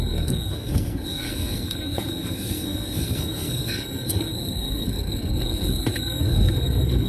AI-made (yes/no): yes